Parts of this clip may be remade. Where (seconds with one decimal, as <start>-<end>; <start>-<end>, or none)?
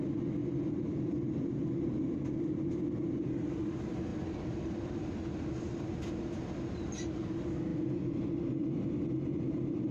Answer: 0.4-2.2; 4.1-5.4